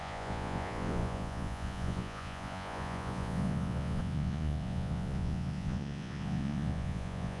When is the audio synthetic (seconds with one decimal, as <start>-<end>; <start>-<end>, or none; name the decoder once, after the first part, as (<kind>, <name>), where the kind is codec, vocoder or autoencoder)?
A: 0.0-7.4 (vocoder, Vocos)